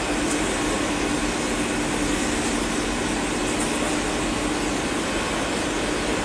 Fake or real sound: real